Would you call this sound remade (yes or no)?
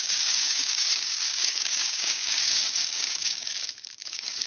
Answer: yes